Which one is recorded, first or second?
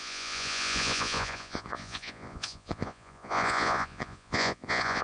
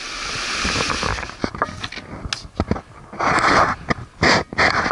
second